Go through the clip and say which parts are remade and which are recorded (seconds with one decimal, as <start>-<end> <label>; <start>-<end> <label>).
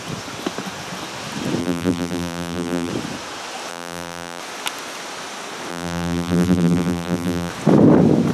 0.0-1.6 recorded; 1.6-2.9 remade; 2.9-3.7 recorded; 3.7-4.4 remade; 4.4-5.7 recorded; 5.7-7.5 remade; 7.5-8.3 recorded